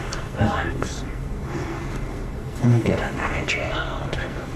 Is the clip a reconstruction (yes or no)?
yes